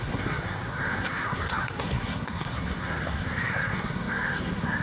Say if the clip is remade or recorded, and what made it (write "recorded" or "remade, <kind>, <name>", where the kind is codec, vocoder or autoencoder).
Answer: remade, codec, SNAC